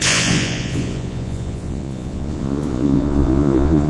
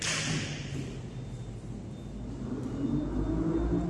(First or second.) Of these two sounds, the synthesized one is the first